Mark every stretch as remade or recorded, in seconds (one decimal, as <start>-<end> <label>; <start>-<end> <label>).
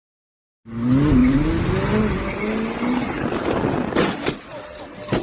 0.0-5.2 recorded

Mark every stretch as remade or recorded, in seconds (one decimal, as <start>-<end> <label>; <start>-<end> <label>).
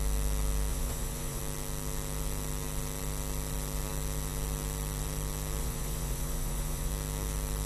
0.0-0.7 recorded; 0.7-1.4 remade; 1.4-5.6 recorded; 5.6-6.9 remade; 6.9-7.7 recorded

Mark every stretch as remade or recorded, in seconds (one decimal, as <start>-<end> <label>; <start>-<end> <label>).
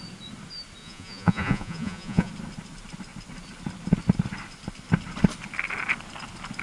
0.0-0.8 recorded; 0.8-2.3 remade; 2.3-6.6 recorded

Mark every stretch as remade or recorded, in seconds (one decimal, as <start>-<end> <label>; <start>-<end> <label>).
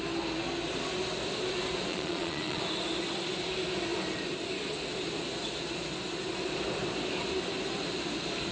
0.0-1.9 recorded; 1.9-2.6 remade; 2.6-8.5 recorded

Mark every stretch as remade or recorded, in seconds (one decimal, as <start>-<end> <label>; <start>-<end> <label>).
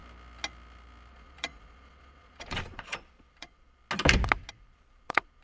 0.0-1.1 recorded; 1.1-3.8 remade; 3.8-4.5 recorded; 4.5-5.4 remade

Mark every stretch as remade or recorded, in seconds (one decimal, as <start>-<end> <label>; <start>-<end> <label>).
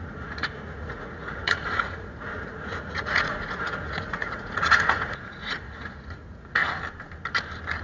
0.0-6.6 remade; 6.6-7.8 recorded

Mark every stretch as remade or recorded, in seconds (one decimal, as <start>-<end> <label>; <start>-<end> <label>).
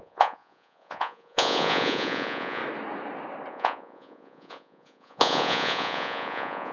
0.0-2.6 remade; 2.6-3.5 recorded; 3.5-6.7 remade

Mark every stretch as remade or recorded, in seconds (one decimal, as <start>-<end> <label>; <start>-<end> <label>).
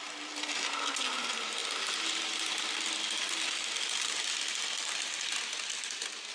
0.0-6.3 recorded